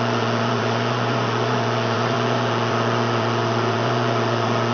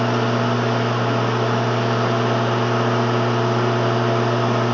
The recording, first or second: second